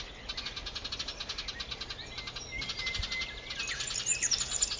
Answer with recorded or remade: recorded